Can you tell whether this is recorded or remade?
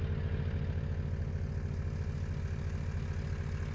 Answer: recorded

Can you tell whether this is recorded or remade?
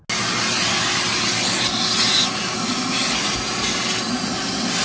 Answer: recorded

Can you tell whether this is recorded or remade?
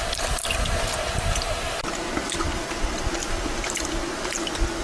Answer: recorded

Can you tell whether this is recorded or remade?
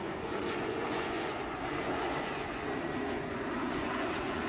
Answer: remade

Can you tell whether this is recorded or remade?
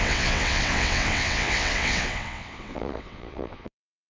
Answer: remade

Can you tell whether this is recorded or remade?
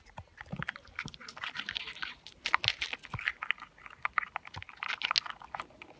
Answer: recorded